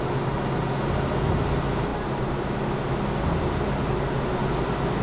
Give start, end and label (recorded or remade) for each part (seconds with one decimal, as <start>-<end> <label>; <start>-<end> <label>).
0.0-5.0 recorded

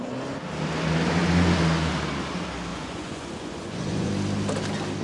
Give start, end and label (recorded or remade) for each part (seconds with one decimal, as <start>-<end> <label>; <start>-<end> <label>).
0.0-2.7 recorded; 2.7-4.1 remade; 4.1-5.0 recorded

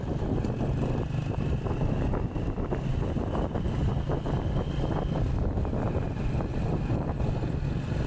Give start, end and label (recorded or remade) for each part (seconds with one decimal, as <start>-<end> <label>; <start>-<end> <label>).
0.0-8.1 recorded

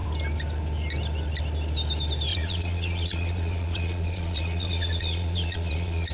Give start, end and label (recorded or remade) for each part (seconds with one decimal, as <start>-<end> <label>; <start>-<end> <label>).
0.0-2.3 recorded; 2.3-6.1 remade